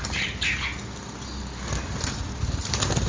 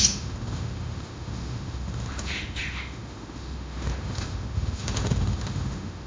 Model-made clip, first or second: second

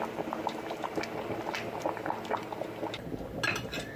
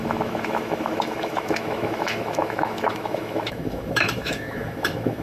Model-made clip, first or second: second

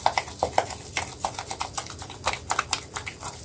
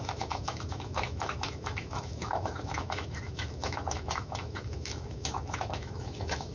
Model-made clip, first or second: second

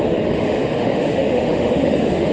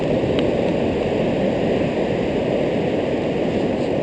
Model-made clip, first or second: first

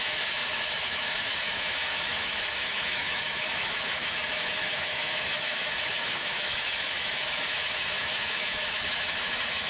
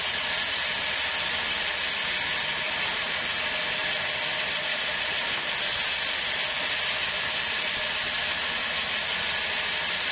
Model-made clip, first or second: first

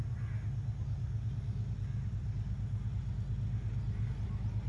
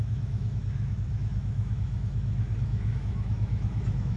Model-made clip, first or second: second